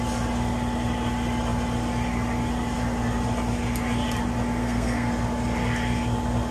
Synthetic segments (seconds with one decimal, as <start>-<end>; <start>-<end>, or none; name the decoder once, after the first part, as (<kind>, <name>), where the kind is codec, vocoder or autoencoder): 4.6-5.1 (codec, SNAC)